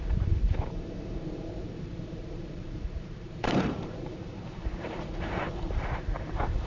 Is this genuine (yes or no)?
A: no